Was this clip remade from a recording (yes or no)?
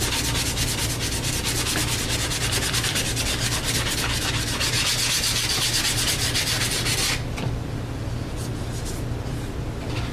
no